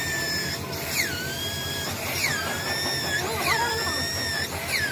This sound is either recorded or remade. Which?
recorded